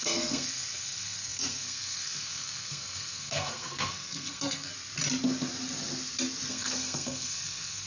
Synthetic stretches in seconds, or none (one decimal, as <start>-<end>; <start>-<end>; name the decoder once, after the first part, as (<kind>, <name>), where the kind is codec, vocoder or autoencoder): 0.0-4.7 (codec, SNAC); 6.5-7.9